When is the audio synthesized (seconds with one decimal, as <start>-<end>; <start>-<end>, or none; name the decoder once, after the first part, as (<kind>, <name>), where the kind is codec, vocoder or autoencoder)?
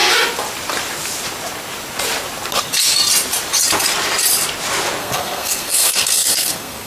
5.0-6.9 (codec, SNAC)